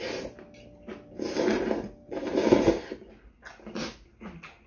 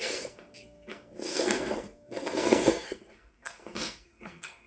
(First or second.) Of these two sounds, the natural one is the first